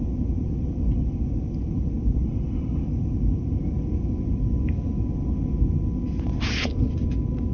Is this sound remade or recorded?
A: recorded